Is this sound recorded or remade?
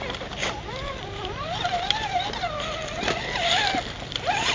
recorded